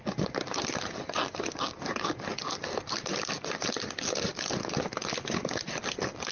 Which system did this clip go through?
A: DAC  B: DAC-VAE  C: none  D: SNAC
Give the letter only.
C